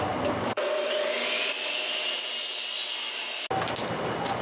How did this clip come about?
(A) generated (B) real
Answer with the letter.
B